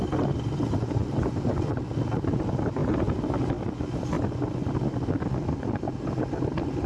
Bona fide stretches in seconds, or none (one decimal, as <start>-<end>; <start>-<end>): 0.0-6.9